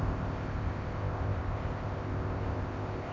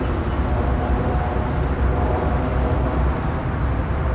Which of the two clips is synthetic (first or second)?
first